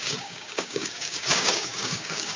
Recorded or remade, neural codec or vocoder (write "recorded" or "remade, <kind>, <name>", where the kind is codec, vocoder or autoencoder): remade, codec, DAC